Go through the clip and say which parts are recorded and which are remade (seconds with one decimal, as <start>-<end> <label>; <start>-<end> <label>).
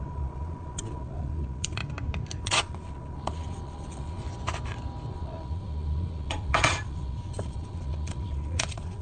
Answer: 0.0-1.8 remade; 1.8-2.4 recorded; 2.4-4.2 remade; 4.2-5.1 recorded; 5.1-9.0 remade